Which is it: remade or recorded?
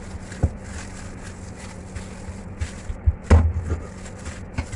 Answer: recorded